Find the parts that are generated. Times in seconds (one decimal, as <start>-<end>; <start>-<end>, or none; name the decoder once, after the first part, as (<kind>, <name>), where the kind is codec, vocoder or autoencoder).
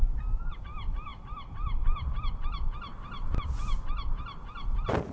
0.0-5.1 (vocoder, BigVGAN v2)